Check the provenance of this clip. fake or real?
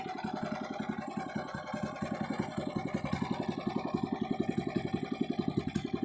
real